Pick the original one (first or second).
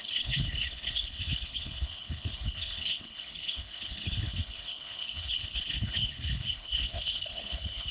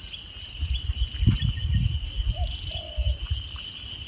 second